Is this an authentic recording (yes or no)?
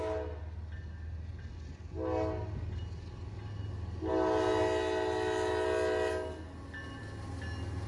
yes